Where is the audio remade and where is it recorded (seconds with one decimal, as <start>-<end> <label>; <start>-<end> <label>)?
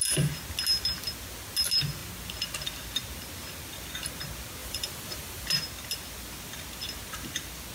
0.0-4.6 recorded; 4.6-5.6 remade; 5.6-7.7 recorded